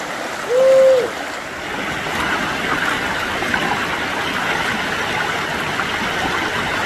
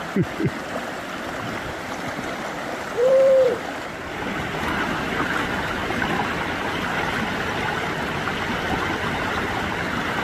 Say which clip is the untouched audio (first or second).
first